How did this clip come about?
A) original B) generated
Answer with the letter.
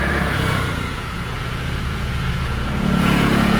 B